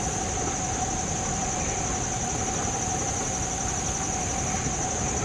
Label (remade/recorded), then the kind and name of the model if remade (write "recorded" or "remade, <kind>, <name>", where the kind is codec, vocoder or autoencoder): recorded